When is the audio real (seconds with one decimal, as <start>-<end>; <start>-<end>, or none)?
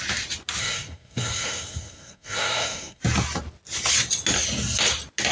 0.0-0.6; 3.0-5.3